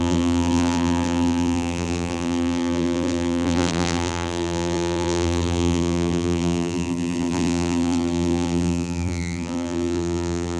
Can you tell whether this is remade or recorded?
remade